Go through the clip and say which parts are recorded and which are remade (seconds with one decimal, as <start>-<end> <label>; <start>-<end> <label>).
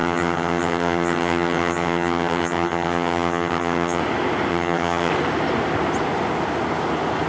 0.0-4.0 remade; 4.0-4.5 recorded; 4.5-5.1 remade; 5.1-7.3 recorded